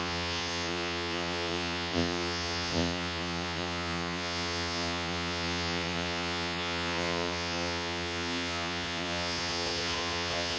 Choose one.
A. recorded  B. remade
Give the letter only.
B